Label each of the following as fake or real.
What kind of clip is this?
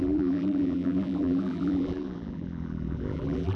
fake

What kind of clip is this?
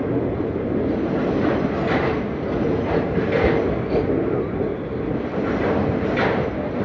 real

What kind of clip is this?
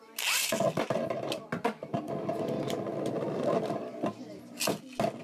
real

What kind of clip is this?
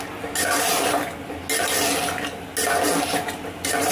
real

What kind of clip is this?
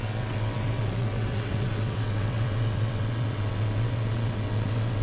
fake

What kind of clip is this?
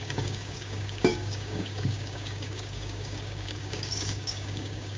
fake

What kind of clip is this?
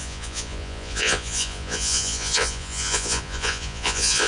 fake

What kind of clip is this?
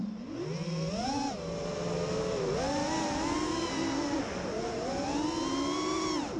real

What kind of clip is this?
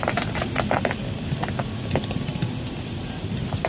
real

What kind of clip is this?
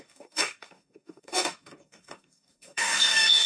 fake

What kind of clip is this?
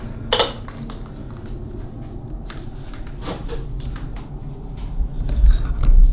real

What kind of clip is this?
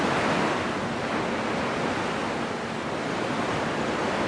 real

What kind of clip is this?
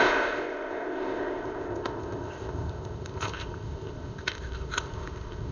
fake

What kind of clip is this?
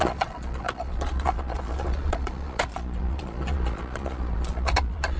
fake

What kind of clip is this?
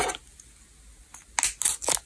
real